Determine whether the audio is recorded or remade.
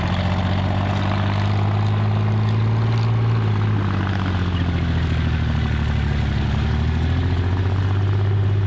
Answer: recorded